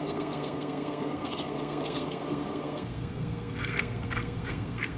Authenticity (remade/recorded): remade